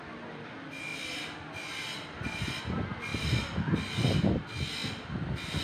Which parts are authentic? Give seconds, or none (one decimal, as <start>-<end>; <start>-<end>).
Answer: 0.0-3.1; 4.3-4.8